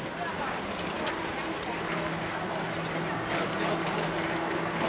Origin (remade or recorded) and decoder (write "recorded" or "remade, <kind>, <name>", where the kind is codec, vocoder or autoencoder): recorded